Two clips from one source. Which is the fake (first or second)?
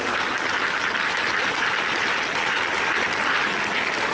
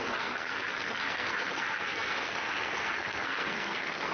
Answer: second